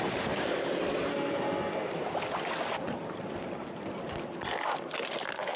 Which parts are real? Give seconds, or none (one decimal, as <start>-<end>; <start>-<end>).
0.0-1.1; 1.9-5.6